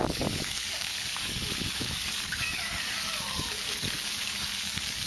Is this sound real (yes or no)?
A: no